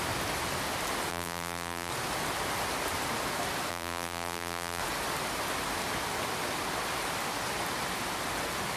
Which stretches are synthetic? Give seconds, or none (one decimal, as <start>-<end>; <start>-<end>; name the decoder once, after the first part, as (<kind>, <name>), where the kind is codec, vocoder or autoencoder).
1.1-1.9 (vocoder, BigVGAN v2); 3.7-4.8